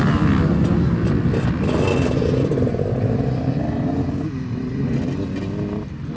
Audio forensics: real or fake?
real